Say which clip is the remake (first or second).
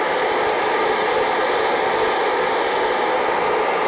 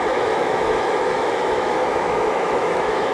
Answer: second